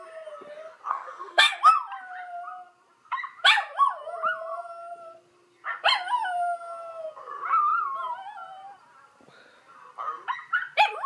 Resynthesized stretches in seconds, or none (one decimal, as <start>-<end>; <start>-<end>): 0.9-1.6